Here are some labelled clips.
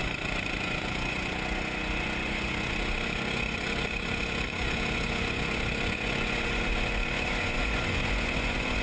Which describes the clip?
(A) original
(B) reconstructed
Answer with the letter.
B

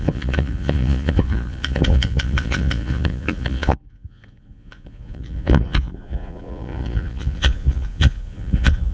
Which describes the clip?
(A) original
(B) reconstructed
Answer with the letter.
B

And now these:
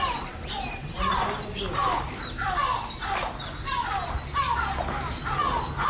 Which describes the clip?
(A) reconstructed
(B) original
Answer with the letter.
B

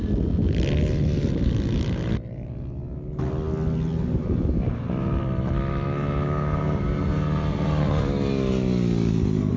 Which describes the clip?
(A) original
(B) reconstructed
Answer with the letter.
A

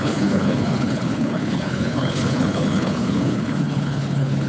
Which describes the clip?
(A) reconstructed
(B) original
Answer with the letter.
A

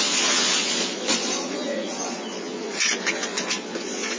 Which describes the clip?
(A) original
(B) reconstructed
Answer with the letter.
B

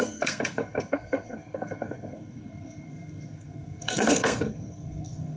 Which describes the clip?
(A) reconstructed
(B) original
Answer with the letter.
A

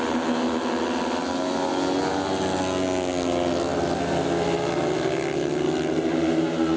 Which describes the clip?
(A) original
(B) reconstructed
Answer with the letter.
A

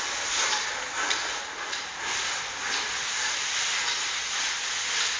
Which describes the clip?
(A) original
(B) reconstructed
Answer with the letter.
A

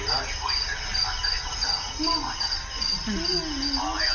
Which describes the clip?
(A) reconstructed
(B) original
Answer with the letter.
B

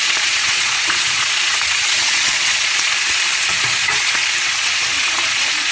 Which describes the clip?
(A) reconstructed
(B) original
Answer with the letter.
A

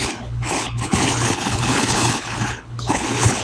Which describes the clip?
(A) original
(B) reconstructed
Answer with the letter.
B